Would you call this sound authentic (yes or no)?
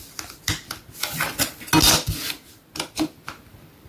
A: yes